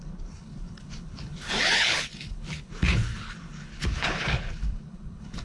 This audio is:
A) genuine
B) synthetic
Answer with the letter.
B